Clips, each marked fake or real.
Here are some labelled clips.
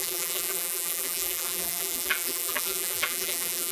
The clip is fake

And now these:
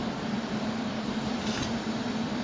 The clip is fake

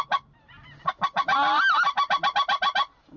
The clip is real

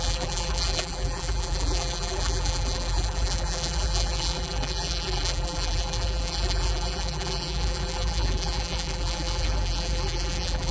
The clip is fake